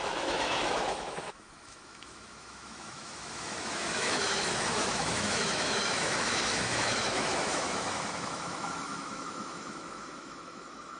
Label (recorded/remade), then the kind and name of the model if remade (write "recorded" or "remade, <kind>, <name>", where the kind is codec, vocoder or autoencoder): remade, autoencoder, DAC-VAE